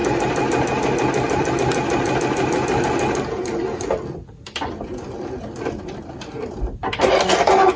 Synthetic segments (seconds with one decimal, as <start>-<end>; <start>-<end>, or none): none